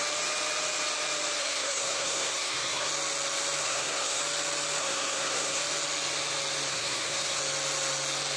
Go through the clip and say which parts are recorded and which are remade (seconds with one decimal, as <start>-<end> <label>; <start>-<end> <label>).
0.0-1.4 recorded; 1.4-2.9 remade; 2.9-3.6 recorded; 3.6-4.2 remade; 4.2-4.8 recorded; 4.8-5.6 remade; 5.6-6.7 recorded; 6.7-7.4 remade; 7.4-8.4 recorded